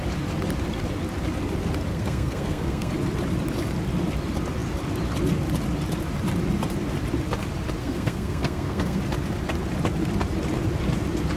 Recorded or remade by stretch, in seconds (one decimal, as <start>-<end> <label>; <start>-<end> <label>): 0.0-1.9 recorded; 1.9-2.9 remade; 2.9-7.8 recorded; 7.8-9.0 remade; 9.0-11.4 recorded